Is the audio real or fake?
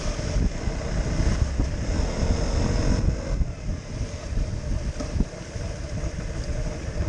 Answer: real